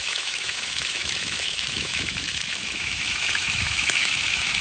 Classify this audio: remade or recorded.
remade